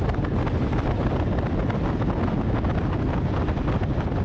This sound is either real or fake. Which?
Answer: real